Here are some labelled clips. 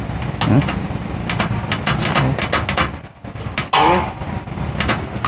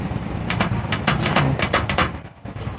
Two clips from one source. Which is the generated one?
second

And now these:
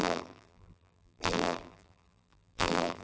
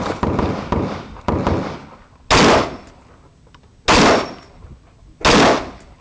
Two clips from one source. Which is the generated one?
first